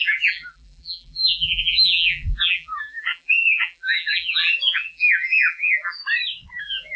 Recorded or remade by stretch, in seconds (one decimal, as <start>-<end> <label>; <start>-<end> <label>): 0.0-6.0 remade; 6.0-6.6 recorded; 6.6-7.0 remade